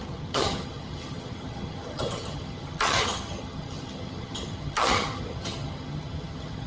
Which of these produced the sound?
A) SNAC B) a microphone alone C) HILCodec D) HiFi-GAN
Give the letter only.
D